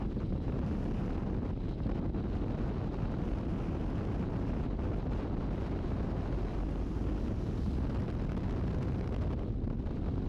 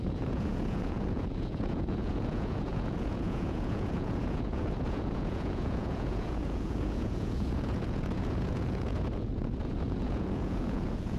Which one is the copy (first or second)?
second